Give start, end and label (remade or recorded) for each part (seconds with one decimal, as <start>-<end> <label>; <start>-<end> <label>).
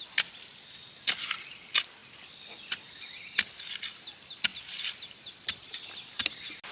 0.0-6.7 recorded